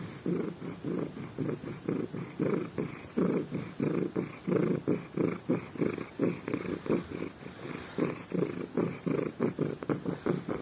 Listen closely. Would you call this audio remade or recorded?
recorded